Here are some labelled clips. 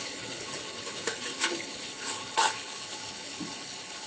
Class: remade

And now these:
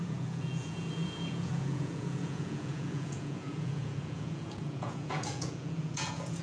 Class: remade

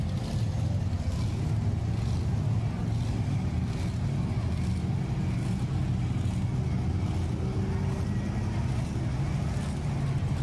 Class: recorded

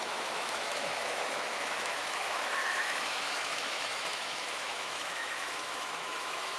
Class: remade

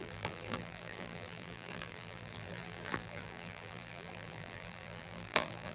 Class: remade